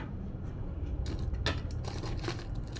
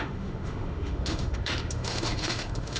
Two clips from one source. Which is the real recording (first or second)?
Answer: first